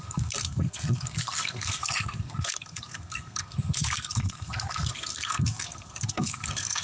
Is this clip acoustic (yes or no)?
no